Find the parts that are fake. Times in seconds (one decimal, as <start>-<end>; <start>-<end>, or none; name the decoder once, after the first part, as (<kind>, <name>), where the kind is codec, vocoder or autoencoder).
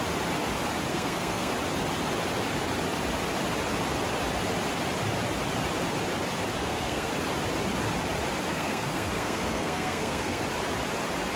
0.9-1.5 (codec, SNAC); 6.6-7.1; 8.5-10.4